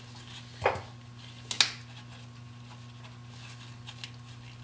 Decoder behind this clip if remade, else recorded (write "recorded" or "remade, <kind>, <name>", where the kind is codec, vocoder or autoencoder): recorded